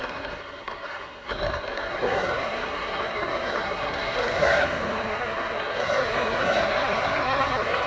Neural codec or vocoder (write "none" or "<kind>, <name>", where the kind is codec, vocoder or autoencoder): codec, SNAC